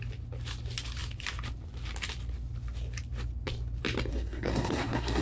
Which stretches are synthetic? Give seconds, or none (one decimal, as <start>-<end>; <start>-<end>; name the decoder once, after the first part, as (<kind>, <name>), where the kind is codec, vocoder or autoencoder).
4.1-5.2 (codec, SNAC)